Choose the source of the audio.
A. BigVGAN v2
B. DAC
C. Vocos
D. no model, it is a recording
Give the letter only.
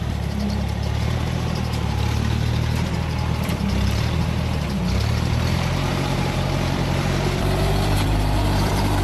A